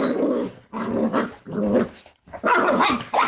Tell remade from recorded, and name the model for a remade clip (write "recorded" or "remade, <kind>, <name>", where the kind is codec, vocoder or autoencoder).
recorded